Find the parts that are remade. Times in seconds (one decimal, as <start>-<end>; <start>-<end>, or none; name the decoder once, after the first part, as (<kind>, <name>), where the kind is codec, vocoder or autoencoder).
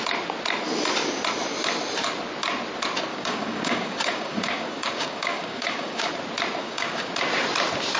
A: 3.1-6.1 (codec, DAC); 6.6-7.1